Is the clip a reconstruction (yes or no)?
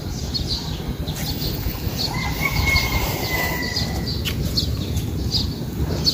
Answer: no